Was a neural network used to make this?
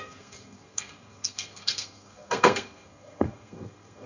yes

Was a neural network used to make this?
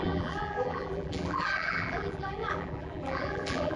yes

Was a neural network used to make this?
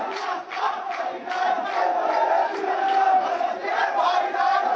no